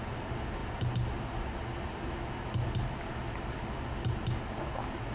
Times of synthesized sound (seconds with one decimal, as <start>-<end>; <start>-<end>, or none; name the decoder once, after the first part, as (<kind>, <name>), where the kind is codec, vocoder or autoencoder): none